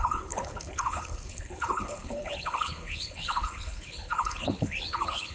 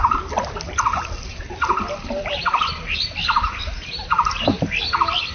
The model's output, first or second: first